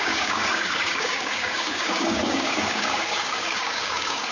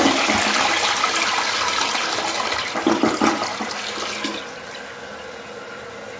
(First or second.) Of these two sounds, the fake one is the first